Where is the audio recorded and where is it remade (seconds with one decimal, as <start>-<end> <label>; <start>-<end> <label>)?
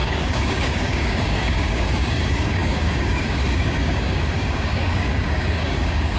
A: 0.0-6.2 remade